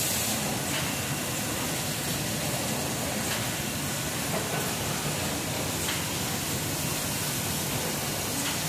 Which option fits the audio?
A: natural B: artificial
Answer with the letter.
A